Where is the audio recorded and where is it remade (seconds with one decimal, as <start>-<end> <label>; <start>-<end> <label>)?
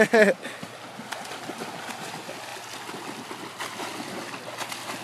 0.0-5.0 recorded